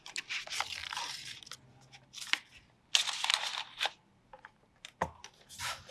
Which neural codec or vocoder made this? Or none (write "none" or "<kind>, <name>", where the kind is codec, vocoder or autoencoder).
none